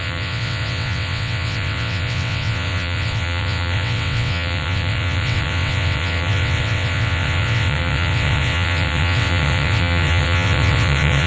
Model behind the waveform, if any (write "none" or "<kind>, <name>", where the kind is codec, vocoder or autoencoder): vocoder, WaveNeXt